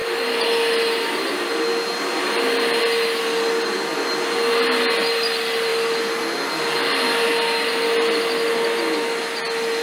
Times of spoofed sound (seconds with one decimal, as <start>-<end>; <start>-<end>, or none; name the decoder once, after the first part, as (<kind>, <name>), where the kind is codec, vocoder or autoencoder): none